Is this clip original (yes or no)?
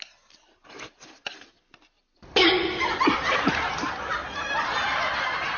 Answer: yes